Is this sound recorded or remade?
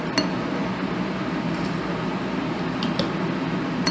recorded